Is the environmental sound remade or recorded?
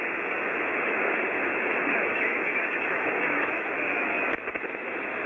remade